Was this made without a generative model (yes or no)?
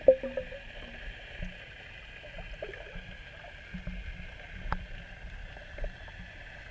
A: yes